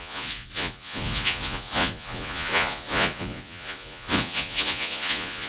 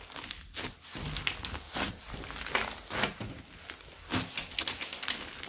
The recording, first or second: second